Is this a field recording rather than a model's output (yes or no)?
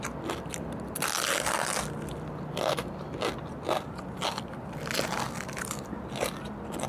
yes